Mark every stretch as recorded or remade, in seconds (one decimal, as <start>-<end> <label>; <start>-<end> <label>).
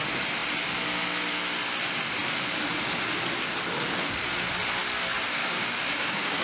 0.0-5.4 recorded; 5.4-6.4 remade